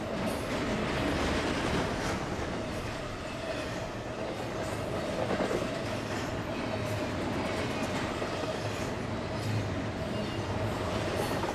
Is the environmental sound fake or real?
real